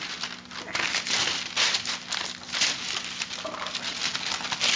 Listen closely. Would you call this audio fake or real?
real